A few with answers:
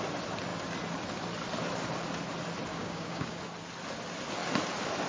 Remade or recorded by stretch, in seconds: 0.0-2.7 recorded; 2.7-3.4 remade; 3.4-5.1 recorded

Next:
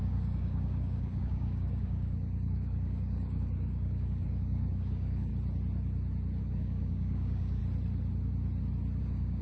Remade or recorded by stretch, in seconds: 0.0-5.3 remade; 5.3-6.4 recorded; 6.4-7.6 remade; 7.6-9.0 recorded; 9.0-9.4 remade

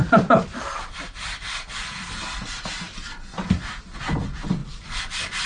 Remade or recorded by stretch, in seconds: 0.0-5.5 recorded

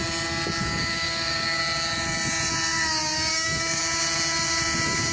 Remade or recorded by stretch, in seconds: 0.0-0.6 recorded; 0.6-1.6 remade; 1.6-3.3 recorded; 3.3-3.8 remade; 3.8-5.1 recorded

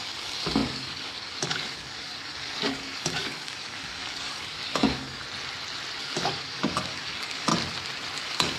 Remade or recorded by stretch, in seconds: 0.0-5.2 remade; 5.2-6.0 recorded; 6.0-7.5 remade; 7.5-8.2 recorded; 8.2-8.6 remade

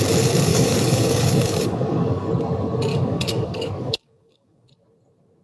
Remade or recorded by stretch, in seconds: 0.0-0.5 recorded; 0.5-2.3 remade; 2.3-2.9 recorded; 2.9-4.7 remade; 4.7-5.4 recorded

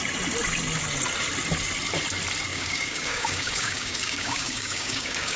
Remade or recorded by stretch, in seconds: 0.0-2.5 recorded; 2.5-5.4 remade

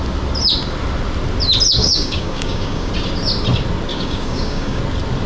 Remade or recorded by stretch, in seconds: 0.0-1.8 recorded; 1.8-2.9 remade; 2.9-3.9 recorded; 3.9-4.8 remade; 4.8-5.3 recorded